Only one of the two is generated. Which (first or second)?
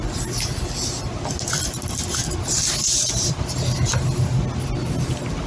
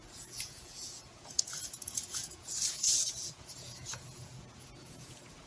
second